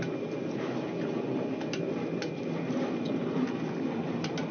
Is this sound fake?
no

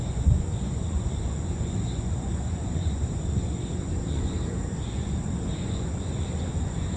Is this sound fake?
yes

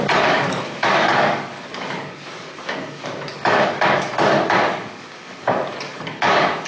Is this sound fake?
yes